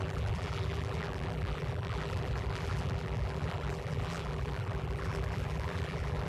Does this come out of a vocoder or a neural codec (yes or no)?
yes